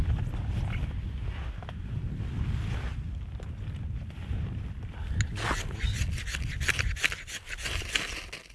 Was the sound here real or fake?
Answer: real